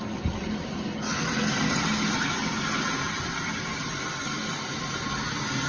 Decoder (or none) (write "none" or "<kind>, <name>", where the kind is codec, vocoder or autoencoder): none